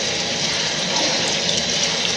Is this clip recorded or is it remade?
remade